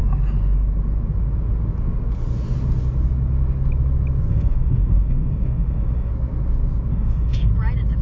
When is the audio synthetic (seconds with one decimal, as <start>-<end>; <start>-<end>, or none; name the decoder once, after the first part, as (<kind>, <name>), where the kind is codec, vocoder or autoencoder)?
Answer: 4.3-6.1 (autoencoder, DAC-VAE); 6.9-7.5